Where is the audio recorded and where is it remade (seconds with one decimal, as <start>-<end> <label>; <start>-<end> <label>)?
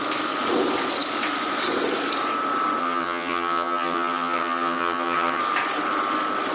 0.0-2.8 recorded; 2.8-5.4 remade; 5.4-6.5 recorded